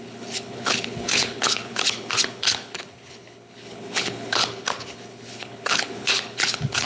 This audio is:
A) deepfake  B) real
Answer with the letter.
A